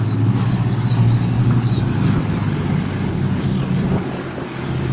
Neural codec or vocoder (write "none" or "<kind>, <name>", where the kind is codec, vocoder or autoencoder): codec, DAC